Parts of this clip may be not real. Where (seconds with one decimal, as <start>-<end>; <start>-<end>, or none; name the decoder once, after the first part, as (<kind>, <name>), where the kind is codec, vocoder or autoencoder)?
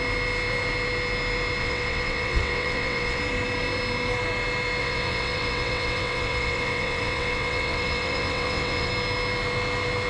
1.6-3.2 (vocoder, WaveNeXt); 4.8-8.9